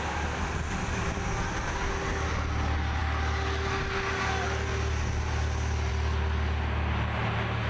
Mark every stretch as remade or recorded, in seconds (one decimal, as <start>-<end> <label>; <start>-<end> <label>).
0.0-7.7 recorded